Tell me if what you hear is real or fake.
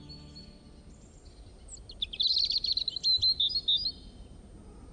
real